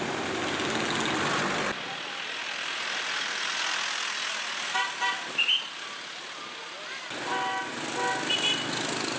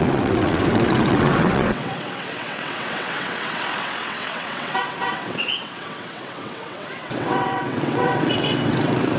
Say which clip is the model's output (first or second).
second